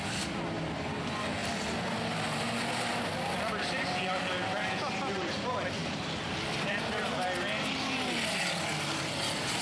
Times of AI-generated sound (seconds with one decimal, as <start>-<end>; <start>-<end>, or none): none